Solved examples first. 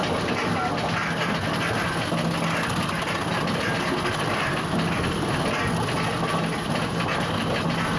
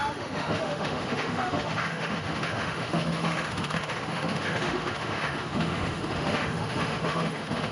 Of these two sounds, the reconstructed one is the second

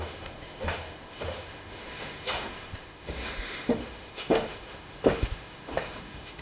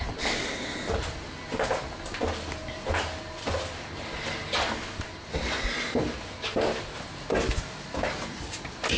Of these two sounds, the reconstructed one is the first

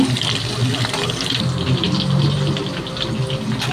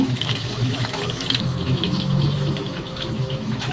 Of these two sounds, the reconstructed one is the second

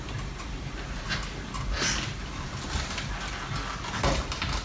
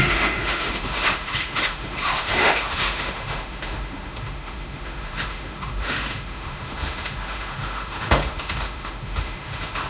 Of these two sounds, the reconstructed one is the second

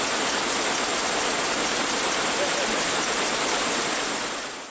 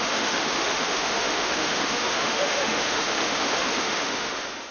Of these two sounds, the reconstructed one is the second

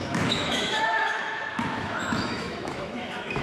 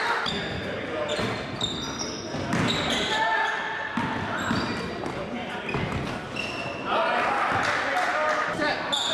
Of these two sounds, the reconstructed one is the first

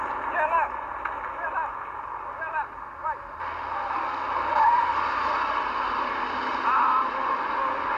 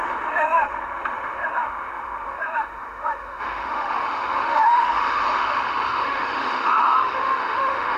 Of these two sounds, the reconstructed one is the second